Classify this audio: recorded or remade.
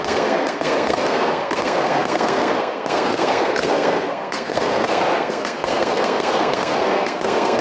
remade